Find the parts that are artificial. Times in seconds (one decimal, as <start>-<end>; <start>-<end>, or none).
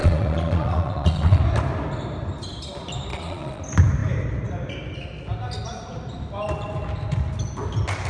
0.0-1.4; 3.1-3.6